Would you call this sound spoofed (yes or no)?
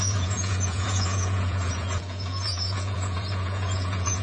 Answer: yes